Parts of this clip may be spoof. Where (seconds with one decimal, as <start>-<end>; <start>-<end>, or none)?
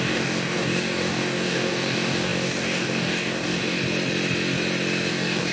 0.0-3.8; 5.1-5.5